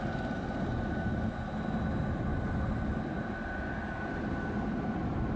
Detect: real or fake real